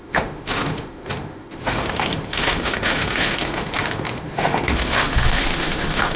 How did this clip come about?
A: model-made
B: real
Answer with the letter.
A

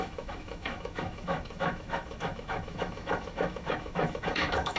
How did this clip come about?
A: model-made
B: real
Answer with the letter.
A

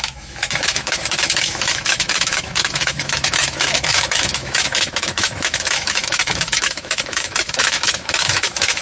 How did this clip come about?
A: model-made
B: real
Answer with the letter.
A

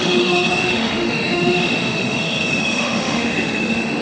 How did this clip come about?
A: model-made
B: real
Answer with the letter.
A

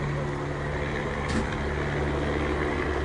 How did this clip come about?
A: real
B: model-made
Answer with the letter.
A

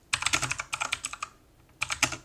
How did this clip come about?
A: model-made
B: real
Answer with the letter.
B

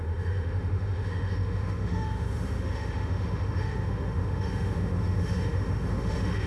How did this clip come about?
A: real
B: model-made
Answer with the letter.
B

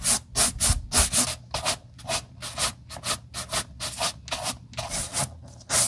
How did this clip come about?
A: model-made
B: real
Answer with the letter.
B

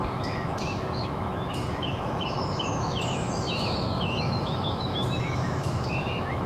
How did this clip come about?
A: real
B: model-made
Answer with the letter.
B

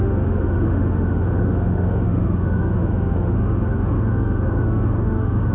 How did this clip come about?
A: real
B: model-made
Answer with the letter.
B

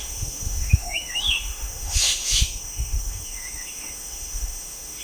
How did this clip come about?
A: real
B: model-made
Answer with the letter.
B